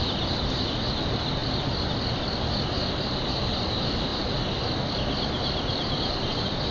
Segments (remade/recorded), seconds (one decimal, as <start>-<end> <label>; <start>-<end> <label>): 0.0-6.7 recorded